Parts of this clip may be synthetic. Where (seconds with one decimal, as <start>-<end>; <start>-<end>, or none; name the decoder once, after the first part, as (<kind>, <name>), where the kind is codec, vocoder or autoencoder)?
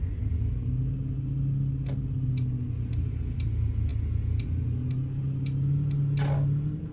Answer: none